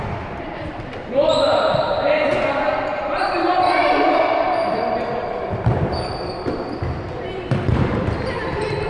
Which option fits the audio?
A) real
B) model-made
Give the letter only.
B